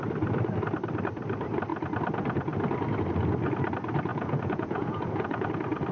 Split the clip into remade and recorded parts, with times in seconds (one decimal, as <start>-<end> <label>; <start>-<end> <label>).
0.0-4.1 recorded; 4.1-5.5 remade; 5.5-5.9 recorded